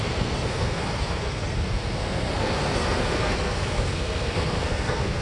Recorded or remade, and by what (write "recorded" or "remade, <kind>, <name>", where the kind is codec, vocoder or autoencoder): remade, codec, SNAC